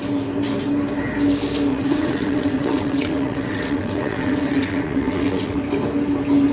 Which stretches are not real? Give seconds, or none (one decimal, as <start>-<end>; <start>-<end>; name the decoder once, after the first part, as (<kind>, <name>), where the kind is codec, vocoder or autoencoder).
1.7-5.6 (vocoder, WaveNeXt)